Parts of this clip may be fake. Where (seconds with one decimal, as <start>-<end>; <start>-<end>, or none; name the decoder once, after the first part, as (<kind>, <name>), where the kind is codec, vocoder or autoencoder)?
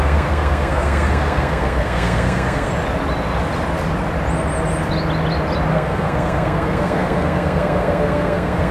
0.0-2.7 (codec, SNAC); 5.7-8.7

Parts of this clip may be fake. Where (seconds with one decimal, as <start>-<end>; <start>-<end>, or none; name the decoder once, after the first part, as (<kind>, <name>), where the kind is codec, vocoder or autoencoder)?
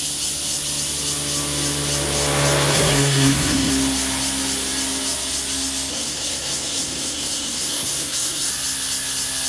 2.7-3.7 (codec, SNAC); 5.9-8.5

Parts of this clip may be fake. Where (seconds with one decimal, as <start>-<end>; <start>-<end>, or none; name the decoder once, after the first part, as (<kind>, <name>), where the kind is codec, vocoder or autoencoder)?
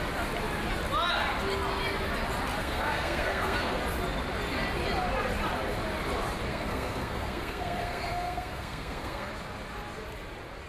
2.6-3.8 (codec, SNAC); 6.5-9.3